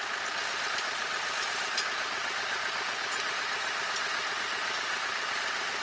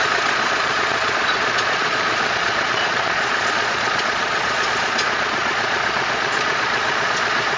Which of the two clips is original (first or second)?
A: first